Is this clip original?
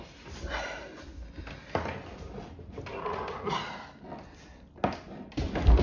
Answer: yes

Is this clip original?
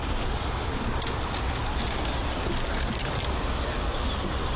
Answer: yes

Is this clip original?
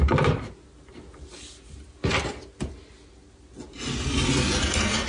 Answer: yes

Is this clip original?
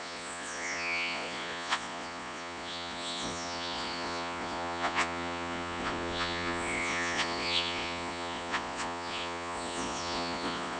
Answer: no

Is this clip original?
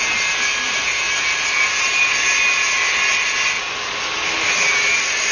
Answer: yes